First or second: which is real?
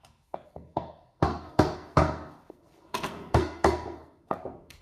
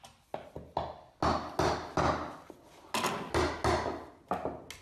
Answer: second